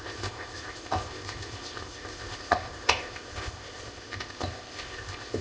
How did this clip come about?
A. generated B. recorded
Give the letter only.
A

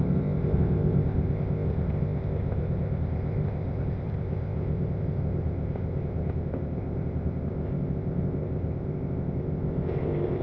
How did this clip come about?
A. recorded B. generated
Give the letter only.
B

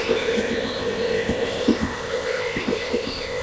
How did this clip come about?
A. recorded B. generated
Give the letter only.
B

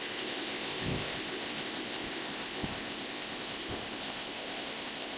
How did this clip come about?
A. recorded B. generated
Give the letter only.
B